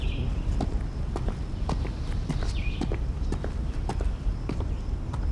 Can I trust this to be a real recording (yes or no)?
no